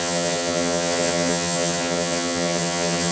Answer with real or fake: fake